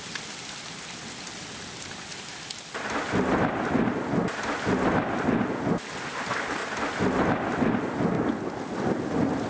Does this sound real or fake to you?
real